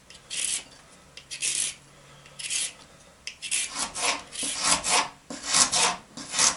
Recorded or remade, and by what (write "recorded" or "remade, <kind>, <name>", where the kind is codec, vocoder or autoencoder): recorded